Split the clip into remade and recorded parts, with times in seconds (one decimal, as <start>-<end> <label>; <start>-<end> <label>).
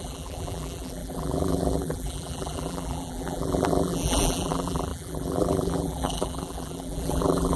0.0-7.6 remade